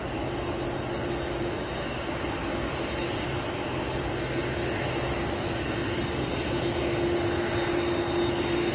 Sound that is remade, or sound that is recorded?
recorded